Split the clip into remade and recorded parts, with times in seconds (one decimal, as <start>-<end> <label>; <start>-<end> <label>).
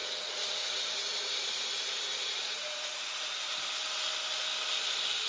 0.0-3.2 remade; 3.2-5.3 recorded